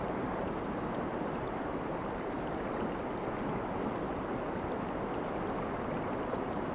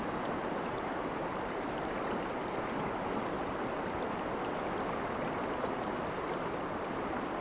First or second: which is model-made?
second